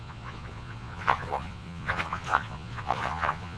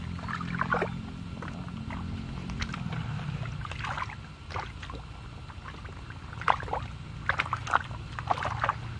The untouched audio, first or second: second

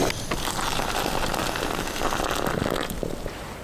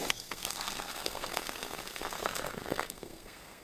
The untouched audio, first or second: first